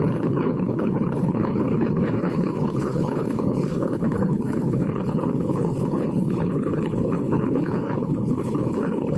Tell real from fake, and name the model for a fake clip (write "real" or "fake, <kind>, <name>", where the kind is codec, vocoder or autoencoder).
fake, codec, HILCodec